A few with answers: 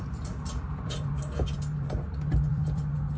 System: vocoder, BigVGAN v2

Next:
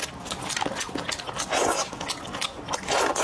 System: none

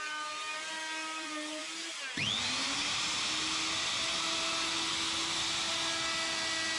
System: none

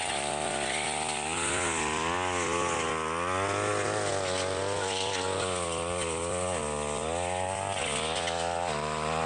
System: none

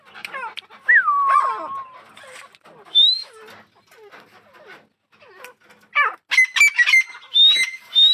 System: none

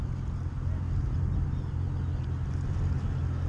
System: none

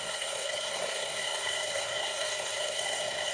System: codec, SNAC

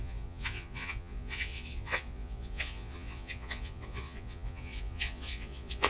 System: vocoder, Vocos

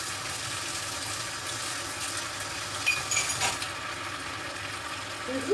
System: none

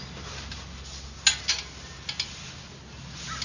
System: none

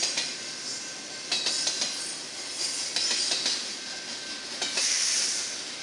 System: none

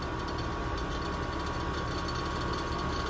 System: none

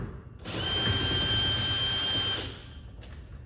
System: none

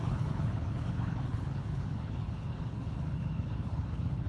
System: codec, HILCodec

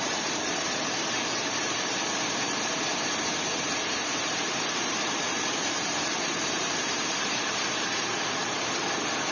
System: vocoder, BigVGAN v2